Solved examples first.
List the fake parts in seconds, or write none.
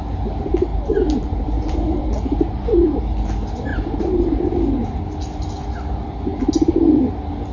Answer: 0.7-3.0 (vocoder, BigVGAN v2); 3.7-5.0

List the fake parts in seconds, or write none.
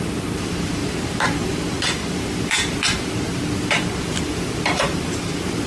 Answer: 0.0-5.7 (vocoder, BigVGAN v2)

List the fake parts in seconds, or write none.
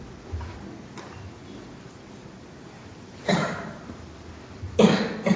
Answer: 1.4-4.0 (vocoder, BigVGAN v2)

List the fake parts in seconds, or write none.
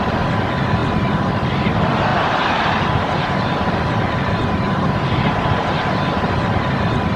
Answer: 2.1-6.3 (vocoder, BigVGAN v2)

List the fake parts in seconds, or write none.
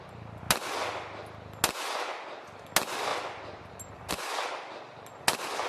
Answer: none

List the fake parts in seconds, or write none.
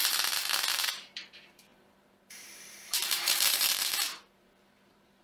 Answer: 0.7-5.2 (vocoder, BigVGAN v2)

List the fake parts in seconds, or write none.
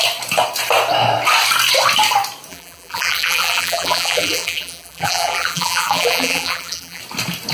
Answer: 2.5-7.0 (vocoder, BigVGAN v2)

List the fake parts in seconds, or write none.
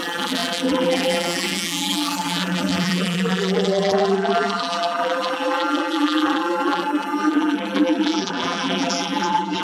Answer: 0.0-9.6 (vocoder, BigVGAN v2)